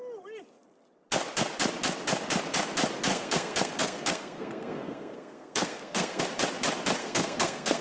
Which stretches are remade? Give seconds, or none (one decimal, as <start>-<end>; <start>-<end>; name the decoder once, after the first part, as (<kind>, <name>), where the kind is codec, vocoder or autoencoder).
3.1-6.2 (codec, SNAC); 7.0-7.8